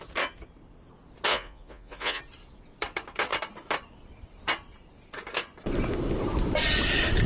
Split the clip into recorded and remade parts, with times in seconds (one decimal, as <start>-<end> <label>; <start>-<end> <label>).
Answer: 0.0-1.3 recorded; 1.3-2.2 remade; 2.2-7.3 recorded